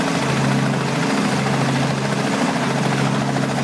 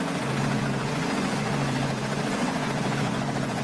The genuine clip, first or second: first